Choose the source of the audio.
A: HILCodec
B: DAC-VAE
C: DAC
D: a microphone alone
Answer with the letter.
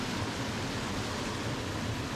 D